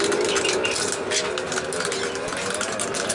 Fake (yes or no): no